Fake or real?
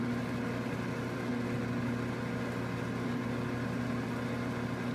real